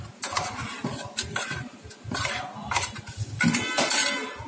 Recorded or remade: recorded